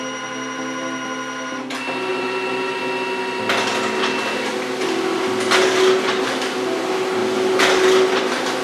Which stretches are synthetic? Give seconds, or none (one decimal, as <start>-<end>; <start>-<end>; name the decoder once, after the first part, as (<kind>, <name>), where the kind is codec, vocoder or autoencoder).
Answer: 2.1-2.8 (vocoder, BigVGAN v2)